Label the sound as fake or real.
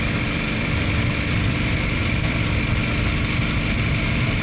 real